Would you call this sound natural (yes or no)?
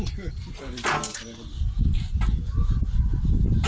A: yes